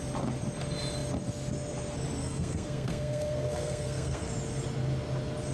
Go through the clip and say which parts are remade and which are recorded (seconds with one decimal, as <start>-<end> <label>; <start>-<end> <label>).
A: 0.0-2.2 recorded; 2.2-4.3 remade; 4.3-5.5 recorded